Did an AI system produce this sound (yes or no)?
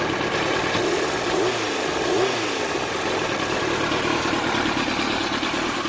no